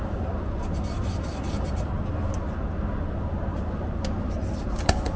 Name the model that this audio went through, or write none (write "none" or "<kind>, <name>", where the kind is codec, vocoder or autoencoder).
none